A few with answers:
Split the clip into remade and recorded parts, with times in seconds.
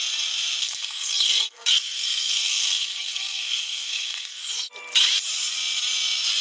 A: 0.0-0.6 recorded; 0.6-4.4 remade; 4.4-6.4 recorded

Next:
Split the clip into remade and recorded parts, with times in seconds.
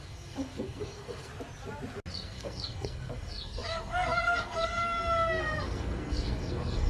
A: 0.0-1.3 remade; 1.3-2.1 recorded; 2.1-6.9 remade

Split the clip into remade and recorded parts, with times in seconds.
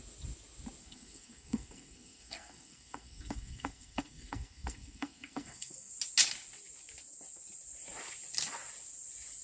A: 0.0-0.8 recorded; 0.8-5.9 remade; 5.9-9.4 recorded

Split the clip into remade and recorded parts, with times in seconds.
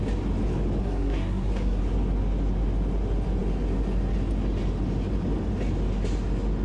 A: 0.0-0.8 recorded; 0.8-1.8 remade; 1.8-6.6 recorded